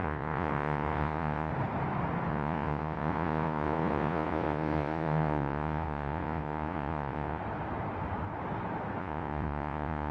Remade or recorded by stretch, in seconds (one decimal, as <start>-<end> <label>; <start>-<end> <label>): 0.0-1.5 remade; 1.5-2.3 recorded; 2.3-7.4 remade; 7.4-9.0 recorded; 9.0-10.1 remade